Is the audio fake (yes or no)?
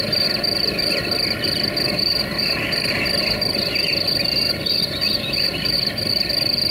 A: no